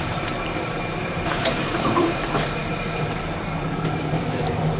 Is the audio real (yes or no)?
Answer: no